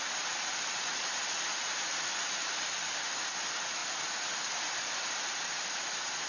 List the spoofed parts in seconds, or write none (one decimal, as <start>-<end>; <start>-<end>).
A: none